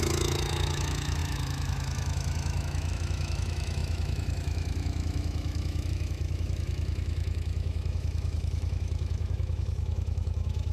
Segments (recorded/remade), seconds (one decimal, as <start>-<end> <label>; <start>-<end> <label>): 0.0-10.7 remade